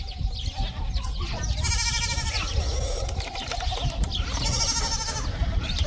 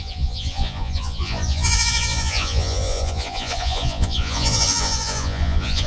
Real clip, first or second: first